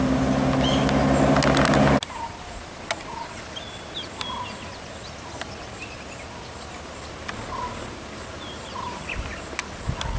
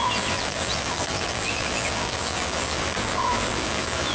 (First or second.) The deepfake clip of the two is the second